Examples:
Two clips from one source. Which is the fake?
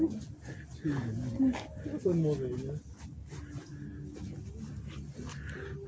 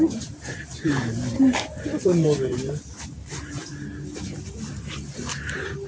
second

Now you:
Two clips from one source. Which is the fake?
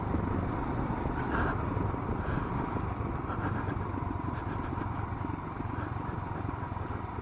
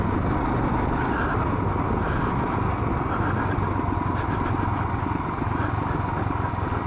first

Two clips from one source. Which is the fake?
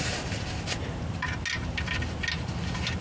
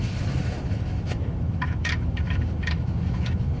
second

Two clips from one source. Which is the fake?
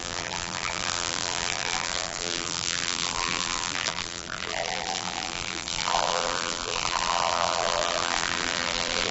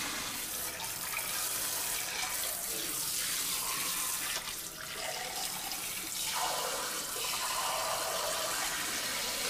first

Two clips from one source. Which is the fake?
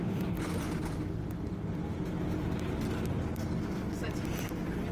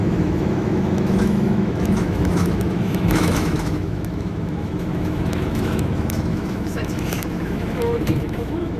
second